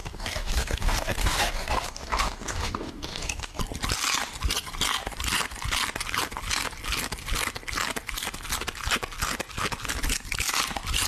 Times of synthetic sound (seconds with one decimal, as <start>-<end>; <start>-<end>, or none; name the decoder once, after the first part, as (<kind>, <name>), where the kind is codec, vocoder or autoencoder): 0.0-3.6 (codec, DAC)